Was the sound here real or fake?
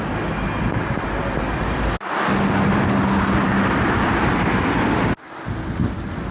real